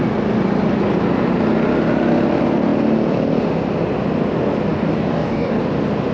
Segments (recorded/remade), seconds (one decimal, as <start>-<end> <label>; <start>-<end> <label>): 0.0-4.7 recorded; 4.7-5.6 remade; 5.6-6.1 recorded